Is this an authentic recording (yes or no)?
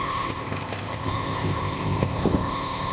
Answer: no